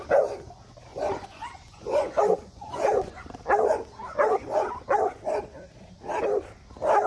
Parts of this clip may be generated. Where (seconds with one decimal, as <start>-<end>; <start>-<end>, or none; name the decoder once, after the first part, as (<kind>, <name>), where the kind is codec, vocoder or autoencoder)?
0.9-3.3 (vocoder, Vocos); 4.1-5.4